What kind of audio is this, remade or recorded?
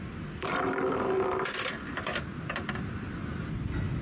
recorded